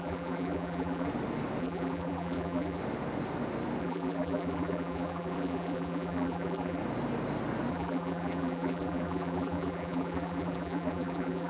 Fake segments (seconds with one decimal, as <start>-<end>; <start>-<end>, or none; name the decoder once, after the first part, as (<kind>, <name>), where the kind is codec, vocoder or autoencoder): 0.0-1.1 (vocoder, BigVGAN v2); 1.6-2.8; 3.8-6.8; 7.7-11.5